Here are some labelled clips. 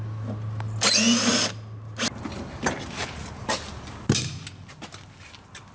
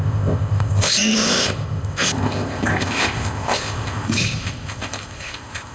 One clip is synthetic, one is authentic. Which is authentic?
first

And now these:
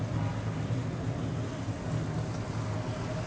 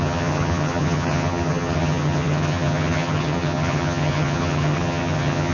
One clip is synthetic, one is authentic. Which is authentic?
first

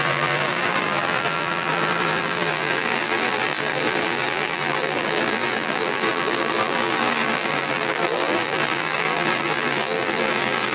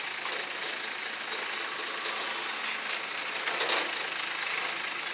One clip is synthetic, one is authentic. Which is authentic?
second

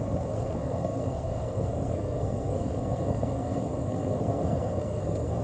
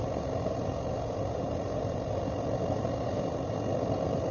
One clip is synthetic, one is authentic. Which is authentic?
second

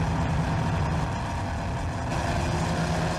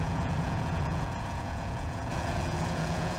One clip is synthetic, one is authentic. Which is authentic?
first